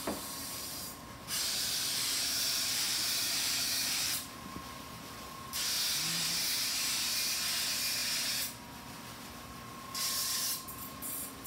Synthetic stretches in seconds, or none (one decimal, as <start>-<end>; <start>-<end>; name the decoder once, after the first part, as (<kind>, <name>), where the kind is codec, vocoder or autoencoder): 0.4-5.6 (vocoder, BigVGAN v2)